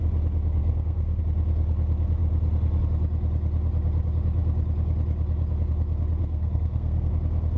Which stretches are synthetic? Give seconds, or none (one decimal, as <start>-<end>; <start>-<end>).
0.6-1.2; 6.2-7.1